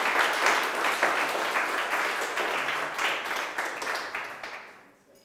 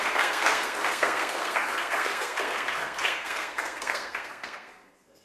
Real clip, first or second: first